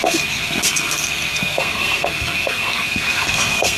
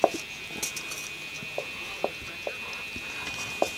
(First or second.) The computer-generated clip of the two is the first